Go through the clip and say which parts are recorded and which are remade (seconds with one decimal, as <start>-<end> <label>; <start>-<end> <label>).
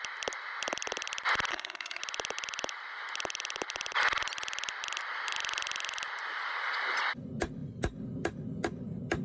0.0-1.5 recorded; 1.5-2.0 remade; 2.0-9.2 recorded